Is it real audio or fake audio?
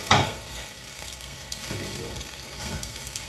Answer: fake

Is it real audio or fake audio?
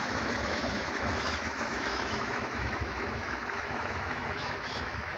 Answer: fake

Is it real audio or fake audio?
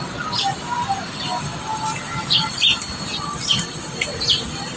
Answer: real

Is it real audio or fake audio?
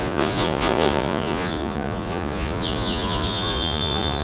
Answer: fake